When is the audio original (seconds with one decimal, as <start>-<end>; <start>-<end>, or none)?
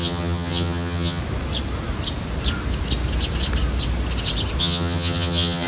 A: 1.2-4.6